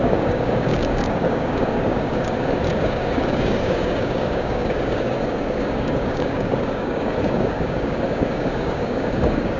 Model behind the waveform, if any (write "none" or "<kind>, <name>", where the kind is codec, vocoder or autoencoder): codec, DAC